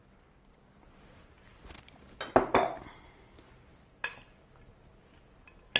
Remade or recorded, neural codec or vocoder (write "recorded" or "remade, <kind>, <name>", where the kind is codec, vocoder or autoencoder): recorded